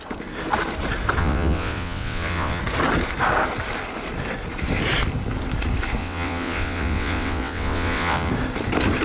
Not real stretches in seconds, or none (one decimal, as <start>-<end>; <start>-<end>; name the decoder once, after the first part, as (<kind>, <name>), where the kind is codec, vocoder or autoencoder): 1.2-2.6 (vocoder, WaveNeXt); 6.0-8.3